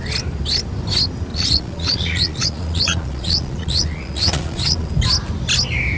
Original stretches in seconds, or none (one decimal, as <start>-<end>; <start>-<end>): 0.0-1.3; 4.9-6.0